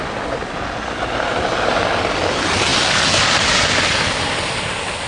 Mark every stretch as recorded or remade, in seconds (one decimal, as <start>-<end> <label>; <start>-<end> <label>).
0.0-5.1 recorded